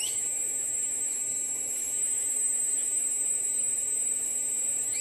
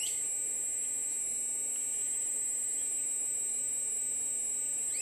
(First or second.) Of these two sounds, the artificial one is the first